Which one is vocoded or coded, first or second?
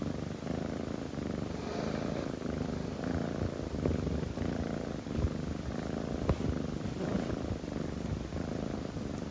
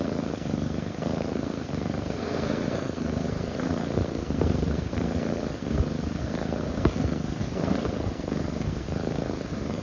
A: second